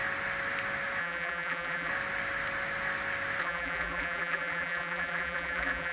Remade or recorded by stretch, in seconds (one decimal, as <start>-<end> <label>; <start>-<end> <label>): 0.0-1.0 recorded; 1.0-1.9 remade; 1.9-3.4 recorded; 3.4-5.9 remade